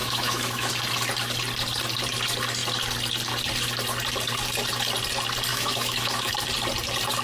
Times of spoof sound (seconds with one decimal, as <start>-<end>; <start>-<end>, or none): 0.0-0.7; 5.5-6.3